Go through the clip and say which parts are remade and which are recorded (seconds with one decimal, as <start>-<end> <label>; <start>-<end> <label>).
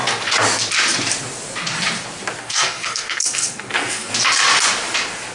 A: 0.0-2.4 recorded; 2.4-4.1 remade; 4.1-5.3 recorded